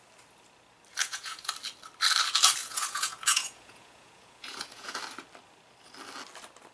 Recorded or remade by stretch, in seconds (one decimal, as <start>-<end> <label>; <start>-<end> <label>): 0.0-1.0 recorded; 1.0-1.5 remade; 1.5-2.6 recorded; 2.6-5.0 remade; 5.0-6.7 recorded